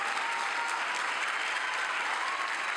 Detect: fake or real real